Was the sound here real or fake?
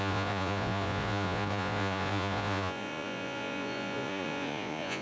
fake